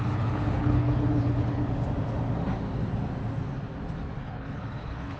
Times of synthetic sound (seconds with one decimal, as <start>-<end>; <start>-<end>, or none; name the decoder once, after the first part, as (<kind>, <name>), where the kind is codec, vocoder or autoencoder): 0.0-1.6 (codec, HILCodec); 4.2-5.2